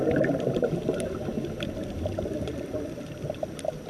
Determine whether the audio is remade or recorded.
recorded